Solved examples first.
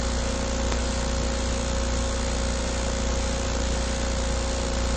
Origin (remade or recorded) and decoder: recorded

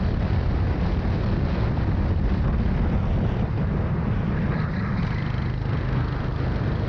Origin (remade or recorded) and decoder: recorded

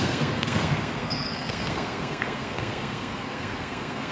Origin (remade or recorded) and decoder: remade, codec, SNAC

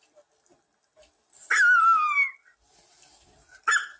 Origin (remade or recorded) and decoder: recorded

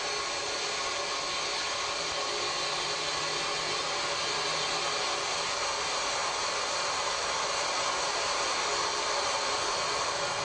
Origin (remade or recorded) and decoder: recorded